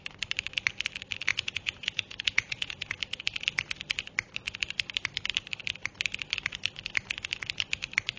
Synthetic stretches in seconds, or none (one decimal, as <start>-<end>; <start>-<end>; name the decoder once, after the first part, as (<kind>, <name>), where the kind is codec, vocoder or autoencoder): 1.3-3.0 (vocoder, Vocos)